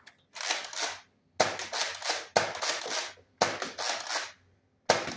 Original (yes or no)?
yes